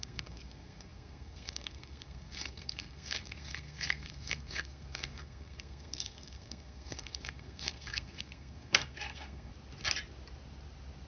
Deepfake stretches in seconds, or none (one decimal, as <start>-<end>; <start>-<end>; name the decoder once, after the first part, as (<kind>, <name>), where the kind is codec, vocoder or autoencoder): 0.0-9.5 (codec, SNAC)